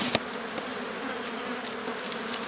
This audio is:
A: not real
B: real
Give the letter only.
B